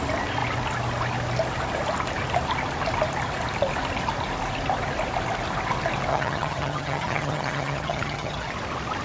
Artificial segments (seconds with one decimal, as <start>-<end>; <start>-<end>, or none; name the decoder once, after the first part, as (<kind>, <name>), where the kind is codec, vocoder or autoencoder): 6.1-8.5 (vocoder, HiFi-GAN)